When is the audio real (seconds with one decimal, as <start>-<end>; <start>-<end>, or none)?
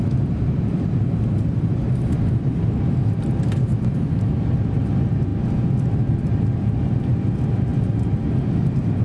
0.0-9.0